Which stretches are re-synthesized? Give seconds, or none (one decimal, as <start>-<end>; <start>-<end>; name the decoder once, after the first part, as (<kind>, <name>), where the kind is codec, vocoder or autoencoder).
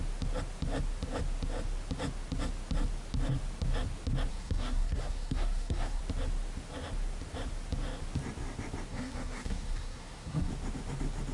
4.3-6.0 (codec, SNAC); 8.9-10.5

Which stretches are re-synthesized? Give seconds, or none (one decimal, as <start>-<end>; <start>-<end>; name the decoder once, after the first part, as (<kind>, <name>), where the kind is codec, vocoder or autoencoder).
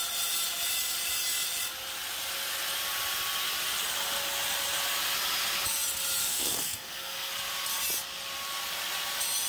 6.2-7.3 (codec, SNAC)